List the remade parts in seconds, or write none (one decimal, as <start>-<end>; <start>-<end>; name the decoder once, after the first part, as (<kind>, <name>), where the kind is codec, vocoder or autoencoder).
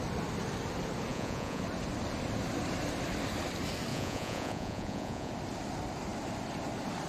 1.1-1.6 (vocoder, Vocos); 3.9-5.3